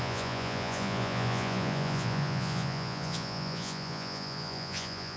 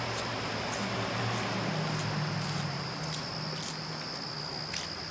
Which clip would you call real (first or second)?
second